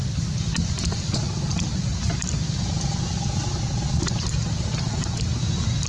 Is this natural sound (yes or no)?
yes